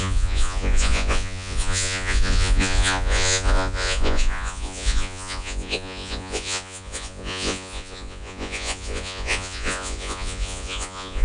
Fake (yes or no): yes